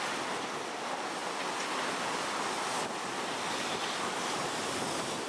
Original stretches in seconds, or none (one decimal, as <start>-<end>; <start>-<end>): 0.0-5.3